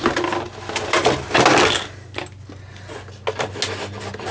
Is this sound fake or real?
real